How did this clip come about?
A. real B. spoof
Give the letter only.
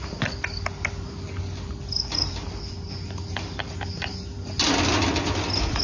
A